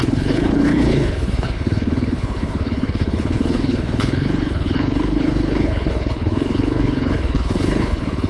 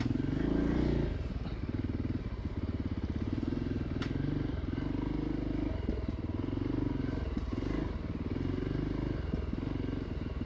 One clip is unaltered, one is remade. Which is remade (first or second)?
first